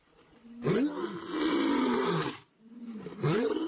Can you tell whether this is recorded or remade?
recorded